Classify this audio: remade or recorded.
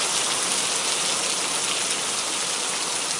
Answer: recorded